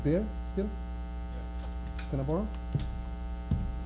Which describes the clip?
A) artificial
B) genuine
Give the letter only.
B